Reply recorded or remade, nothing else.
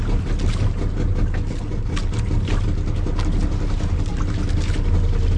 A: recorded